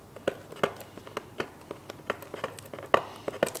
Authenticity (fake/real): real